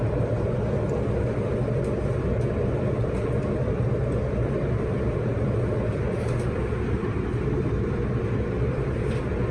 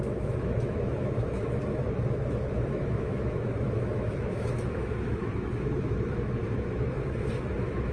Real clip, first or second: first